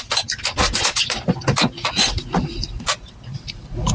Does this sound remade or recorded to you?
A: recorded